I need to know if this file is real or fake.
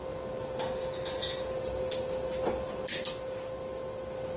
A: real